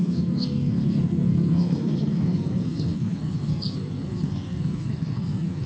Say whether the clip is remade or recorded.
remade